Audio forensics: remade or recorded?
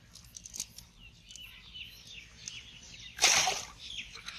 recorded